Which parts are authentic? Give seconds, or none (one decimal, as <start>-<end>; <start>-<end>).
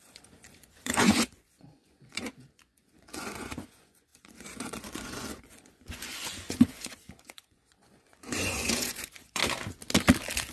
9.4-10.5